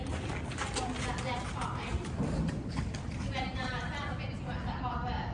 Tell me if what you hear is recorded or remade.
recorded